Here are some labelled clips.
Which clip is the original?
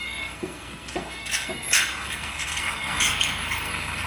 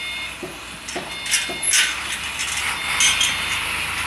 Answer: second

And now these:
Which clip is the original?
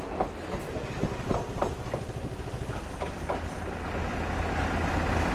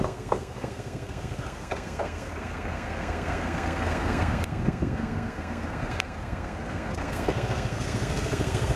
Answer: first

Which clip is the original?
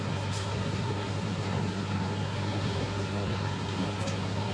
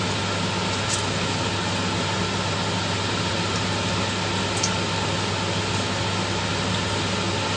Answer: second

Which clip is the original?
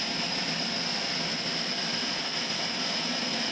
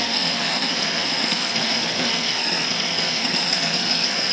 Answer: first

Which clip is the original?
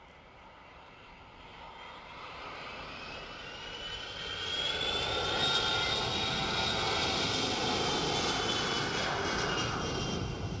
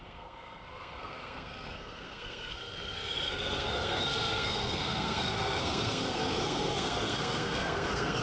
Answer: first